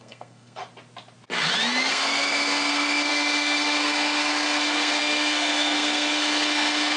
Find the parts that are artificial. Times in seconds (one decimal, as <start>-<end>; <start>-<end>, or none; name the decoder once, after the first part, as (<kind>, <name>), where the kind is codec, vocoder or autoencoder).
0.0-0.6 (codec, SNAC); 1.9-7.0